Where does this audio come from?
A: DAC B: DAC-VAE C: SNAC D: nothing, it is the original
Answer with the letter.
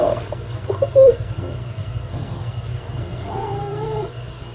C